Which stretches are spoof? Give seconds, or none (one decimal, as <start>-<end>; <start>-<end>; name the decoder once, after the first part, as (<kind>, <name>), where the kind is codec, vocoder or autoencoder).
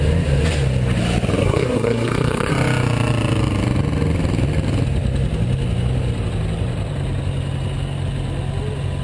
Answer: 1.4-2.5 (codec, SNAC)